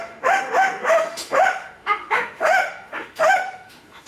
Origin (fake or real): fake